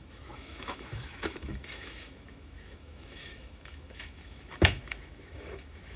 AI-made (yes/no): yes